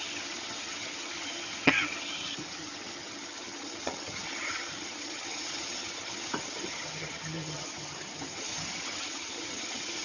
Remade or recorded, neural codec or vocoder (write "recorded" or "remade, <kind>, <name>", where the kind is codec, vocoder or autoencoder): remade, vocoder, HiFi-GAN